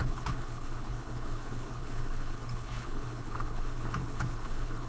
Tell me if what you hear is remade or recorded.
remade